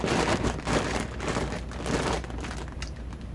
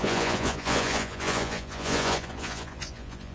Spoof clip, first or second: second